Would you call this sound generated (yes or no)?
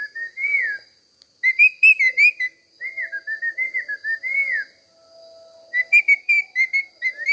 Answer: no